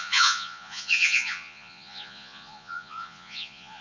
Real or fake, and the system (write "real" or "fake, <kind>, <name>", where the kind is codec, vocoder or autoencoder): fake, vocoder, Vocos